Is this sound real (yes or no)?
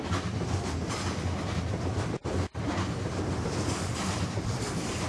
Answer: yes